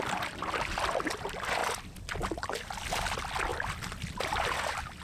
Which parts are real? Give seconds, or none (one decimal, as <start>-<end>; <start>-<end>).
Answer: 0.0-5.0